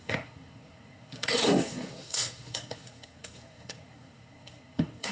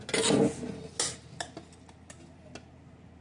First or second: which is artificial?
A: first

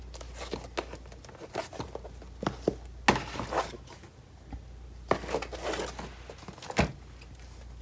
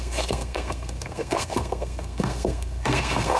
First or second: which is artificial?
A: second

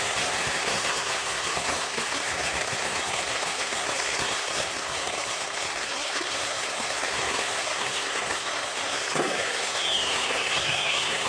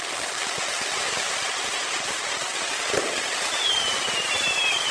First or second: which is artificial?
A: first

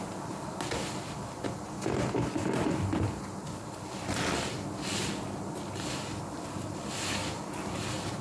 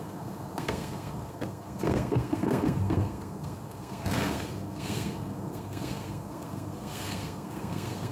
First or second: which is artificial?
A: second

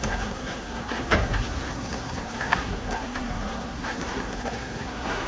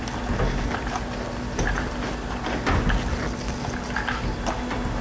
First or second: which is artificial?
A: first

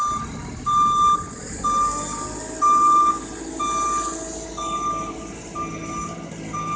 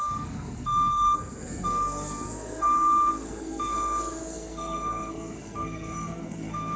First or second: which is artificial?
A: second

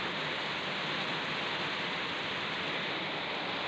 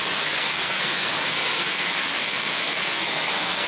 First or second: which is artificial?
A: second